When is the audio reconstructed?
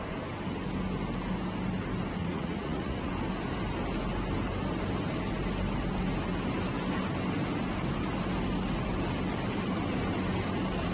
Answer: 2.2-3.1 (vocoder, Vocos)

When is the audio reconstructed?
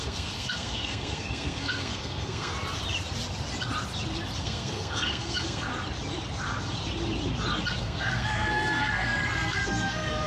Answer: 0.0-2.5 (codec, SNAC); 4.4-5.7; 7.8-10.3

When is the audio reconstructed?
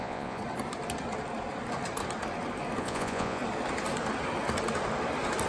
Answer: 0.0-0.4 (vocoder, Vocos); 2.8-3.4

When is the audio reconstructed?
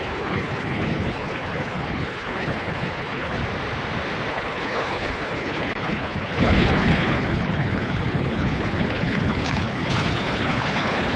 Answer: 0.0-3.4 (codec, HILCodec); 4.3-11.2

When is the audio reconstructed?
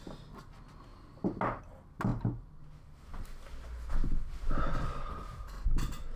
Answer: none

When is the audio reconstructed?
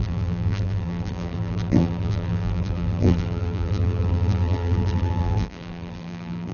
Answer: 0.0-6.5 (vocoder, BigVGAN v2)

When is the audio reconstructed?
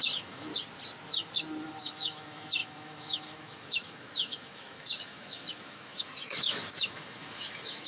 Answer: 0.0-0.5 (autoencoder, DAC-VAE); 1.8-7.9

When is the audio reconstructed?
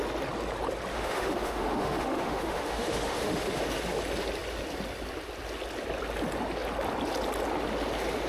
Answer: 0.9-3.6 (autoencoder, DAC-VAE)